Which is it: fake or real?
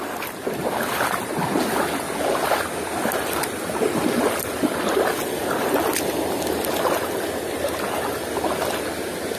real